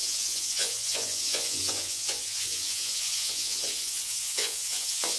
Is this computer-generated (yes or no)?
yes